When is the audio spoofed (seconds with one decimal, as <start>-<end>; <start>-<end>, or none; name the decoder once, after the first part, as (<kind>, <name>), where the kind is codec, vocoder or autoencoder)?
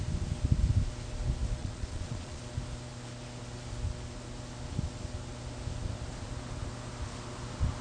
1.6-2.4 (vocoder, Vocos)